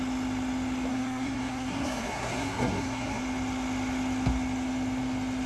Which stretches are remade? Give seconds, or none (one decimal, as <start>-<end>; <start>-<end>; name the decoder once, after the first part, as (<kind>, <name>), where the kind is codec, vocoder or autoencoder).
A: 0.9-3.2 (codec, SNAC)